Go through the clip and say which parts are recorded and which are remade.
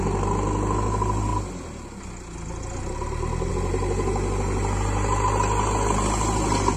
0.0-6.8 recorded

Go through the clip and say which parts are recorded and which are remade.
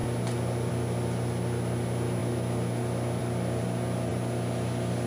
0.0-5.1 recorded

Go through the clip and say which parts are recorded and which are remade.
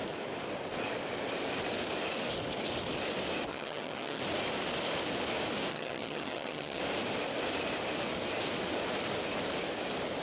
0.0-3.5 recorded; 3.5-4.2 remade; 4.2-5.7 recorded; 5.7-6.8 remade; 6.8-10.2 recorded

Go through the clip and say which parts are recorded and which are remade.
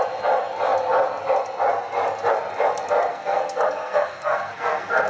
0.0-3.1 recorded; 3.1-5.1 remade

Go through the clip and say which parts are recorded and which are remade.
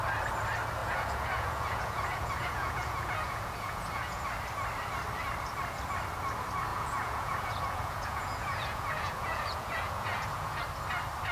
0.0-0.8 recorded; 0.8-4.2 remade; 4.2-6.7 recorded; 6.7-10.6 remade; 10.6-11.3 recorded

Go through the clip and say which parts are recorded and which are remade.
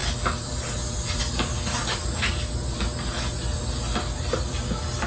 0.0-5.1 recorded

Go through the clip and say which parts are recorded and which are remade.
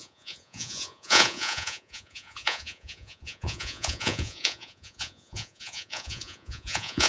0.0-7.1 remade